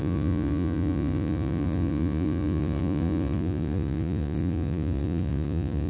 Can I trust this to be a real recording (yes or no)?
no